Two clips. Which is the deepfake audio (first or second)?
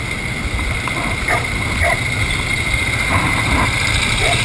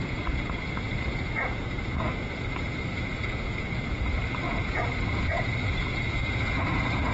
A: second